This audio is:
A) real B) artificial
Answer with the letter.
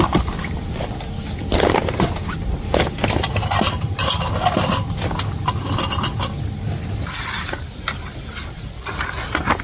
B